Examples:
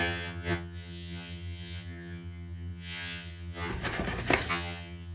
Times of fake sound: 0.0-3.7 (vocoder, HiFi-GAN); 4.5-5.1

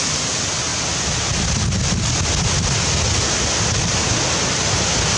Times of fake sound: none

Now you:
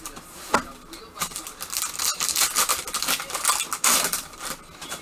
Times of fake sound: none

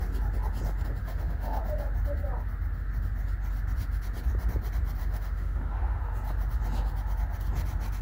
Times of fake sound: 1.0-1.6 (autoencoder, DAC-VAE); 5.0-6.0

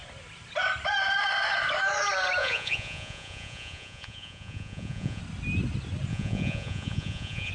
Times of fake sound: 2.4-5.2 (vocoder, Vocos); 6.1-7.5

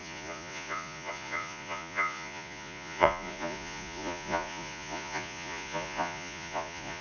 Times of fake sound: 0.0-7.0 (vocoder, Vocos)

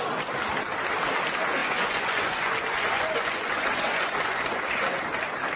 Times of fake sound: 1.6-5.0 (vocoder, Vocos)